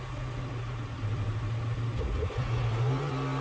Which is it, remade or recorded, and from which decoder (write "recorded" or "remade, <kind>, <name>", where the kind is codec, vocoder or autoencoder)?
recorded